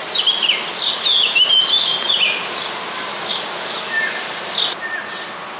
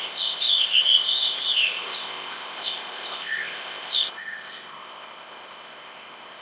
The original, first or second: first